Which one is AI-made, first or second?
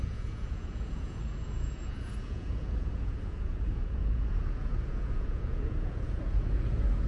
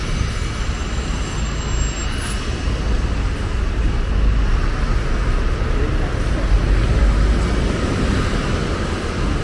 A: first